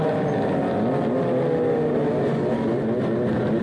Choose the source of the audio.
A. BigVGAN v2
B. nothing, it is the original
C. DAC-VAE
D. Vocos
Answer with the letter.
B